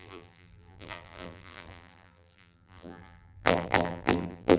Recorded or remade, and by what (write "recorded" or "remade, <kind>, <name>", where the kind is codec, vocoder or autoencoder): remade, vocoder, BigVGAN v2